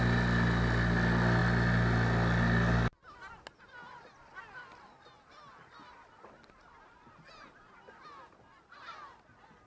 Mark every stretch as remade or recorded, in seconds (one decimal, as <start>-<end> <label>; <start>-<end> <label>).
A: 0.0-9.7 recorded